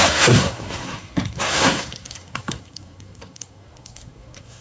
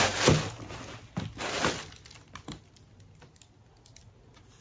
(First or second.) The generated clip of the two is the first